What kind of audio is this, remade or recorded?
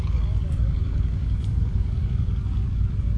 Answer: remade